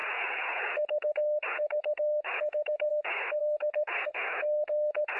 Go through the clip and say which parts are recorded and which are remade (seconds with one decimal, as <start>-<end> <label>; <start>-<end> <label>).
0.0-5.2 remade